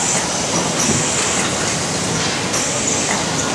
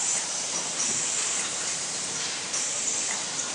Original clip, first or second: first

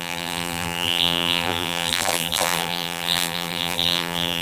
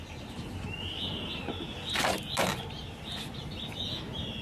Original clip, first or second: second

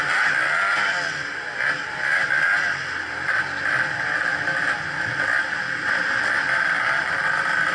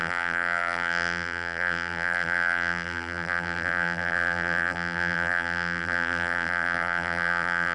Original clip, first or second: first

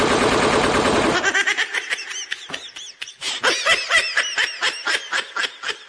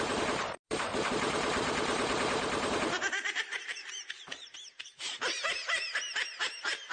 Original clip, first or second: first